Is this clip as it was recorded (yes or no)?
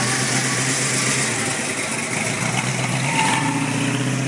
yes